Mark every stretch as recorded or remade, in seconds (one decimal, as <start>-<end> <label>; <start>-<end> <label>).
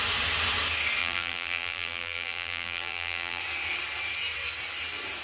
0.0-1.0 recorded; 1.0-3.4 remade; 3.4-5.2 recorded